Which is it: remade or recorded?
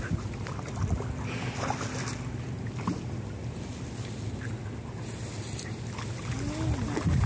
recorded